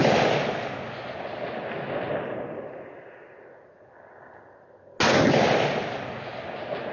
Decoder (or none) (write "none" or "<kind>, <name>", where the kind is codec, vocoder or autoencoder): none